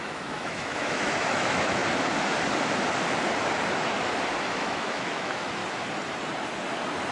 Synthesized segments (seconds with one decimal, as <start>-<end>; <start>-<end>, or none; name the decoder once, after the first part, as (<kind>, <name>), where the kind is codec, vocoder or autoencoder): 0.0-1.8 (autoencoder, DAC-VAE); 4.4-5.6